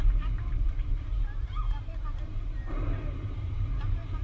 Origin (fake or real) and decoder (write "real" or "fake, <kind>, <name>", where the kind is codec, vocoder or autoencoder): fake, vocoder, BigVGAN v2